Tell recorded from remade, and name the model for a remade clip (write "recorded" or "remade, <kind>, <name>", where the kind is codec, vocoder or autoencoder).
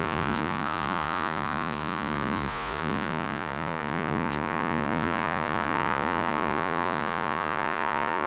remade, vocoder, Vocos